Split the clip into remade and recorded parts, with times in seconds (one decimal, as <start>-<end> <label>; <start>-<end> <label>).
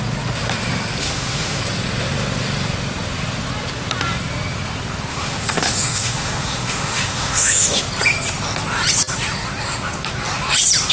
0.0-1.0 recorded; 1.0-1.6 remade; 1.6-5.1 recorded; 5.1-7.8 remade; 7.8-10.9 recorded